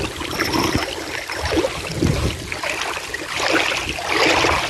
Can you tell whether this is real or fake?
real